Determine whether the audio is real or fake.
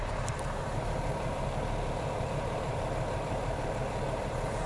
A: fake